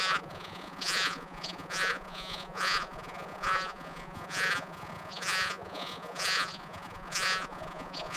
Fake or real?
fake